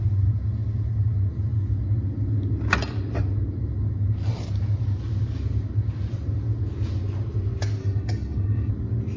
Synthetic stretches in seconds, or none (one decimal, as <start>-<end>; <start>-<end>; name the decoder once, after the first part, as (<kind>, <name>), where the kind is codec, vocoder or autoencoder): 7.8-8.7 (codec, HILCodec)